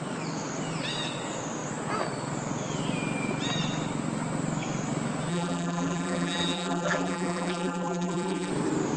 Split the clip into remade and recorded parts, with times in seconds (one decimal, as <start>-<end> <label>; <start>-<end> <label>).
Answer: 0.0-5.3 recorded; 5.3-8.5 remade; 8.5-9.0 recorded